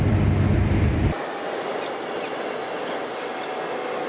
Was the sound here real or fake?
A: real